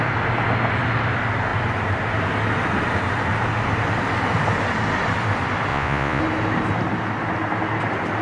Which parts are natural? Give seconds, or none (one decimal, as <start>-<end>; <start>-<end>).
0.0-5.7; 6.2-8.2

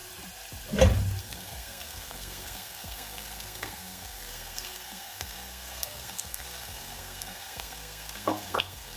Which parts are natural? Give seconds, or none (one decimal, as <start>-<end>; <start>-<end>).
0.0-1.2

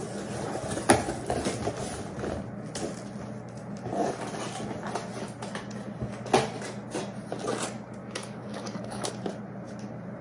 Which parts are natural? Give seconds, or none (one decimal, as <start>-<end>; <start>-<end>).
0.0-8.0; 9.1-10.2

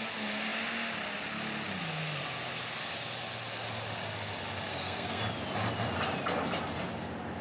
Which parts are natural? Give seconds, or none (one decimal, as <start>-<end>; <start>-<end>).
0.0-4.7; 5.2-7.4

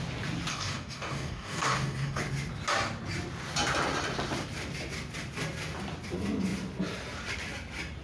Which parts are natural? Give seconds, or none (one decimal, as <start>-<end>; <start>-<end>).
0.0-0.5; 2.2-8.0

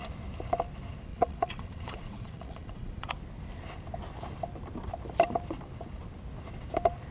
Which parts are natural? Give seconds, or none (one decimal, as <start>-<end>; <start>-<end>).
0.0-1.1; 3.1-7.1

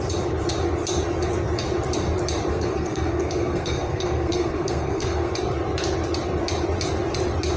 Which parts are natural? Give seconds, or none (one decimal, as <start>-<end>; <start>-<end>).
0.0-2.5; 5.3-7.6

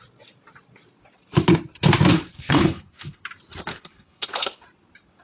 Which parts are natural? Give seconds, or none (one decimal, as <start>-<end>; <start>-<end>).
0.0-2.1; 3.2-3.7; 4.6-5.2